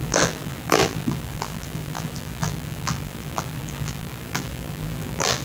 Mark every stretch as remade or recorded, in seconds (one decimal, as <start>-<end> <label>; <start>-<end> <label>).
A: 0.0-5.4 remade